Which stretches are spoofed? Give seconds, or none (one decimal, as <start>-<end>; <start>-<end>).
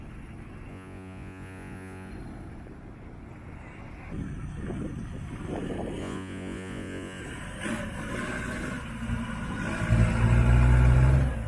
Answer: 0.7-2.1; 6.0-7.2